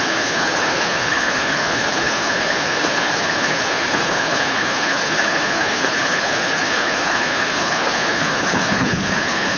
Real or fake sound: fake